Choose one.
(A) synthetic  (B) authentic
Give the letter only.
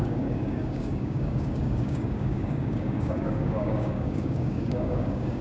A